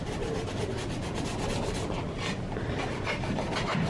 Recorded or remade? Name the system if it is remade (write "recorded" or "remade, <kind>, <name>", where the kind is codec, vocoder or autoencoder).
recorded